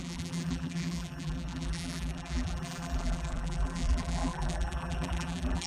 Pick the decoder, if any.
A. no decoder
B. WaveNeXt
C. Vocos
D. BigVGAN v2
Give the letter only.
D